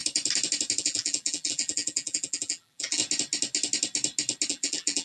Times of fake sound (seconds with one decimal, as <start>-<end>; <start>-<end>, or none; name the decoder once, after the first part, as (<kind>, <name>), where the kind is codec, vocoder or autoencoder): 0.8-3.0 (vocoder, BigVGAN v2); 4.5-5.0